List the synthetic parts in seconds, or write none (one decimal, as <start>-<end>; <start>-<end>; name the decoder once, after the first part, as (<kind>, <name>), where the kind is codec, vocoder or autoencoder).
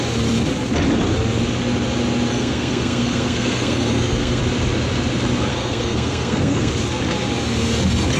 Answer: 2.3-4.4 (codec, SNAC); 5.5-6.7